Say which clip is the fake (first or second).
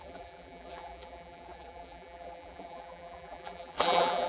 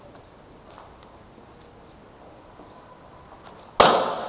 first